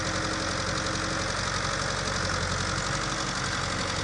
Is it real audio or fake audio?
real